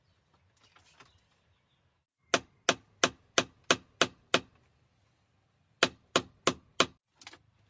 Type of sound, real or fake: real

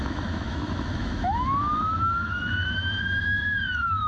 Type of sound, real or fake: fake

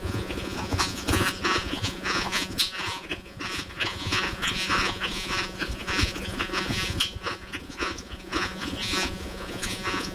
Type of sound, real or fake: fake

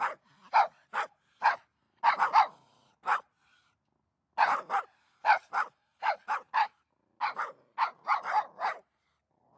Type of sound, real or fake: real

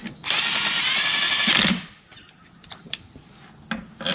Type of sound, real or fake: real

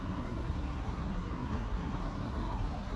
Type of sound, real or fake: fake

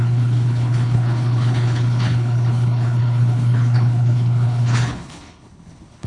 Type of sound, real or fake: fake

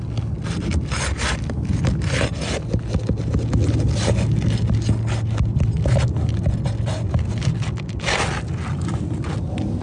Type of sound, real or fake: real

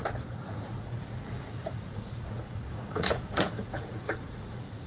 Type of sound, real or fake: fake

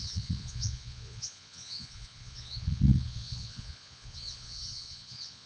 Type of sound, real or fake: fake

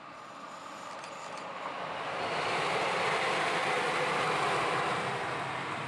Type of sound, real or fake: real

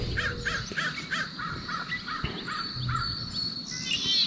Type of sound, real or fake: real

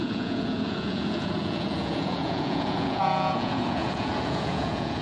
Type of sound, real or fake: fake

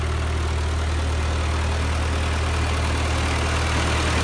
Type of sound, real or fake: real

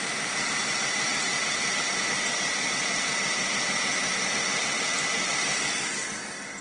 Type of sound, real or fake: real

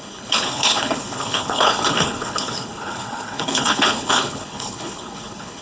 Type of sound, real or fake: fake